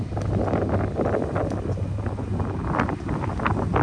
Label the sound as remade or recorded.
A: recorded